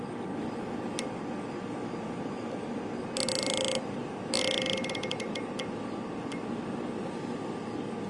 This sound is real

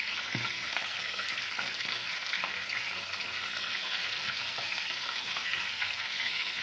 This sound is fake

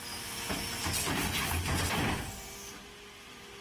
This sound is real